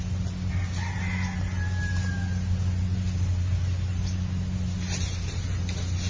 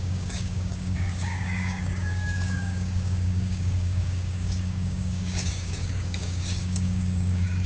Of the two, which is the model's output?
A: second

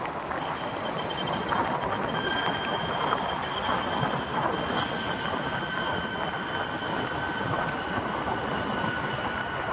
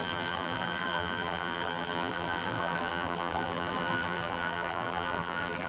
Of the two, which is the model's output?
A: second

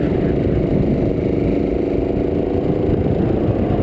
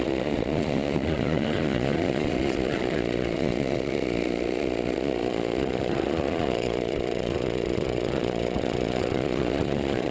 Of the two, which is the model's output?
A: second